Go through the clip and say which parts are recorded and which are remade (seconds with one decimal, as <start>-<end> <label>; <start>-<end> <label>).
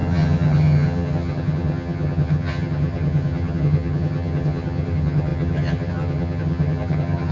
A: 0.0-7.3 remade